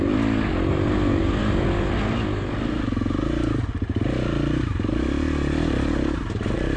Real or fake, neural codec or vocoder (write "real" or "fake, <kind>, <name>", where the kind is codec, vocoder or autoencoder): real